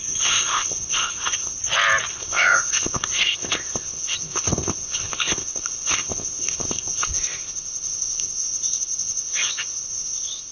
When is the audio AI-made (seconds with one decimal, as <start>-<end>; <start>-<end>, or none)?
0.0-1.6; 2.1-10.5